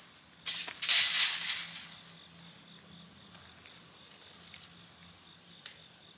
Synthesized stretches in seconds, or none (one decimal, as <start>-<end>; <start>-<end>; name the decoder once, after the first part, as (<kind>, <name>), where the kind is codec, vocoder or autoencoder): 0.0-1.6 (vocoder, BigVGAN v2); 5.3-6.2